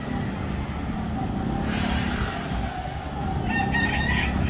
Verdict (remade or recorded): recorded